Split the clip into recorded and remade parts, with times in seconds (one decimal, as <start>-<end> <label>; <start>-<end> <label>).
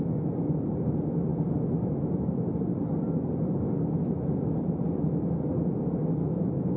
0.0-6.8 recorded